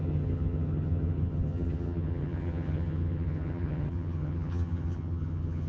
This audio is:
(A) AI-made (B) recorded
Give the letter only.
A